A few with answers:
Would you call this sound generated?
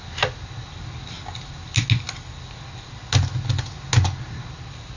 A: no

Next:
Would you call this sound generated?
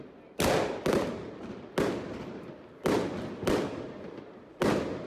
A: no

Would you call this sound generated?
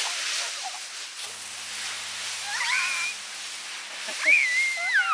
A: no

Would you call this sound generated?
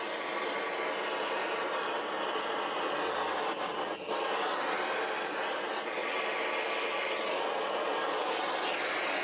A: no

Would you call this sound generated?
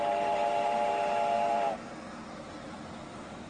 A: no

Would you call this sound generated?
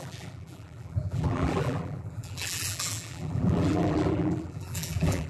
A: yes